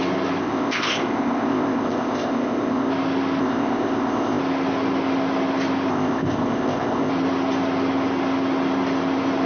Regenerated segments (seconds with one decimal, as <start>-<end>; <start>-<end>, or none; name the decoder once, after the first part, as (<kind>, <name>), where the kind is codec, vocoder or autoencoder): 0.4-2.9 (codec, ZipCodec); 3.4-4.4; 5.9-7.1